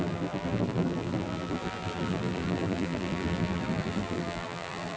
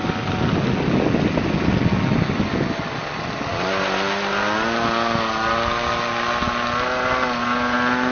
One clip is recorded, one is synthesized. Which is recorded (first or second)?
second